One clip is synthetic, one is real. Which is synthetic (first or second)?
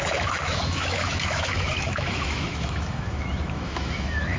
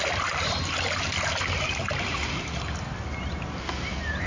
first